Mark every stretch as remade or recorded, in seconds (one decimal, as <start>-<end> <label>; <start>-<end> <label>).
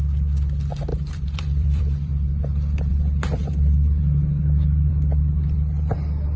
0.0-0.9 recorded; 0.9-2.1 remade; 2.1-6.4 recorded